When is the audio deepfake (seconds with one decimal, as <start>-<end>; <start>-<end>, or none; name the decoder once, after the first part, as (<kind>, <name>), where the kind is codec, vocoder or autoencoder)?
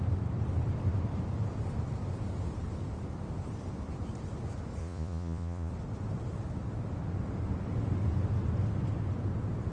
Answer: 4.8-5.7 (vocoder, Vocos)